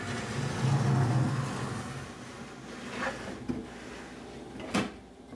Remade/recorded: recorded